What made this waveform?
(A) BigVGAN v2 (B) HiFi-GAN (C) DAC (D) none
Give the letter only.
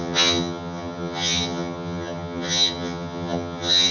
B